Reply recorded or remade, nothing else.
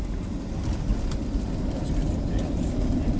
recorded